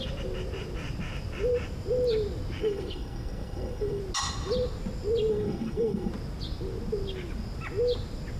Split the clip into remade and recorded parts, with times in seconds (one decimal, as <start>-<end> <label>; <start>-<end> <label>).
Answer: 0.0-2.6 recorded; 2.6-4.0 remade; 4.0-5.3 recorded; 5.3-6.1 remade; 6.1-8.4 recorded